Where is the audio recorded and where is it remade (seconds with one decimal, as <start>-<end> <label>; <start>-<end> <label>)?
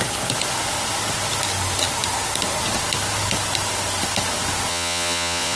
0.0-4.7 recorded; 4.7-5.6 remade